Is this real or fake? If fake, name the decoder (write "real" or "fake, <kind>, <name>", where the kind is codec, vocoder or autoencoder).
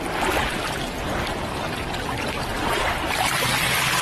fake, vocoder, BigVGAN v2